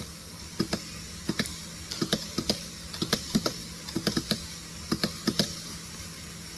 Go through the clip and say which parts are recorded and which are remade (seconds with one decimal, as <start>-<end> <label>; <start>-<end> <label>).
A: 0.0-6.6 recorded